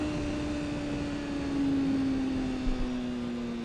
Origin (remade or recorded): recorded